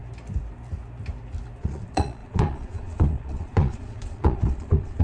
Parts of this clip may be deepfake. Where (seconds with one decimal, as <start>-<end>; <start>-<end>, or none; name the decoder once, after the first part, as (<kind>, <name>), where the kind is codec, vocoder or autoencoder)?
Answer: 1.6-5.0 (vocoder, Vocos)